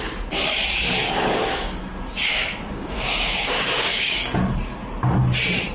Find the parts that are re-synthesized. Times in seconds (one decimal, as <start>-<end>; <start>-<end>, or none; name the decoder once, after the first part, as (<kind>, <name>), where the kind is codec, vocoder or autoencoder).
1.0-1.9 (codec, DAC); 2.3-4.2